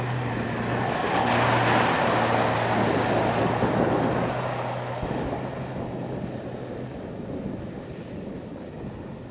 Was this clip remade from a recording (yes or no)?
no